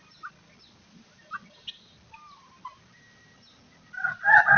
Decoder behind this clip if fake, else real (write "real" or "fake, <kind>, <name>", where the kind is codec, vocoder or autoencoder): real